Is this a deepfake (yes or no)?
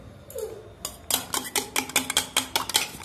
no